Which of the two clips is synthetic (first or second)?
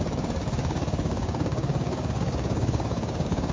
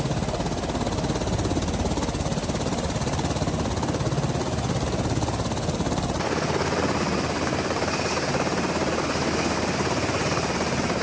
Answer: first